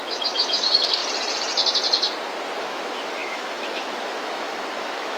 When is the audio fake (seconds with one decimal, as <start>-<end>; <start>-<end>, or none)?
0.0-1.0; 2.6-5.2